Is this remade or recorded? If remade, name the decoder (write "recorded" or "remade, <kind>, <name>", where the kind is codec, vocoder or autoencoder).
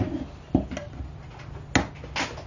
recorded